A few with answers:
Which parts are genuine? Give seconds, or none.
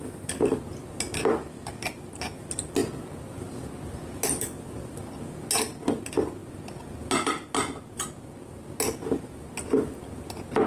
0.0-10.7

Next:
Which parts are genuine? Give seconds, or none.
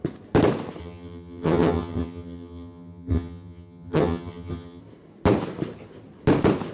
0.0-0.8; 4.8-6.7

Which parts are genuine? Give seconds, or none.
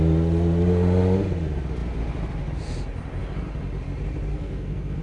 0.0-4.3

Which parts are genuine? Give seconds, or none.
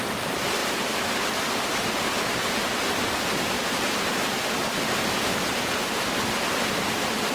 0.0-0.6; 1.2-7.3